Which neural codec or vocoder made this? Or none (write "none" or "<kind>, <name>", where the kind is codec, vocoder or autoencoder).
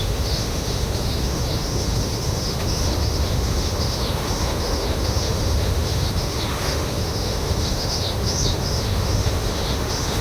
autoencoder, DAC-VAE